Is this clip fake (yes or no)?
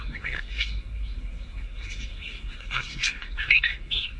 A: yes